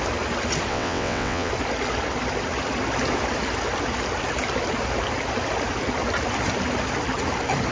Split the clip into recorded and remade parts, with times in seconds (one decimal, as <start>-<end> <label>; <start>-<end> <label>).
0.0-0.7 recorded; 0.7-1.5 remade; 1.5-7.7 recorded